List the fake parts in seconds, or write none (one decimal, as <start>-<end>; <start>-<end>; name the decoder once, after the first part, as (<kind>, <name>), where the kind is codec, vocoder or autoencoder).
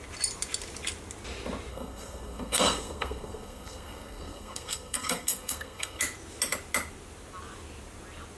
1.7-6.0 (codec, SNAC)